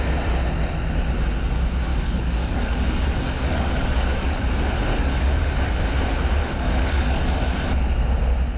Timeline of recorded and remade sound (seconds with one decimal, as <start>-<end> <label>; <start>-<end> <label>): 0.0-1.9 recorded; 1.9-4.5 remade; 4.5-4.9 recorded; 4.9-5.8 remade; 5.8-6.4 recorded; 6.4-7.4 remade; 7.4-8.6 recorded